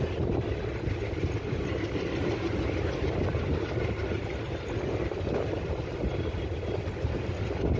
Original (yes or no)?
yes